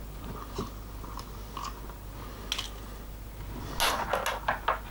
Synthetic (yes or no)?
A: no